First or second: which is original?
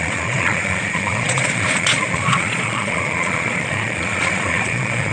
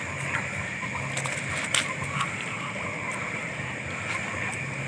second